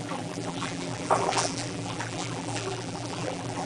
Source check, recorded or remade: remade